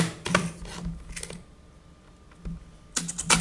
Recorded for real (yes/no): yes